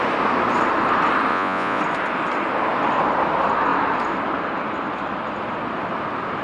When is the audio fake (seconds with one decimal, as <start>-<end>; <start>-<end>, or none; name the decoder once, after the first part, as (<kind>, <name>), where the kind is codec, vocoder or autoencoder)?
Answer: 1.3-1.8 (vocoder, Vocos)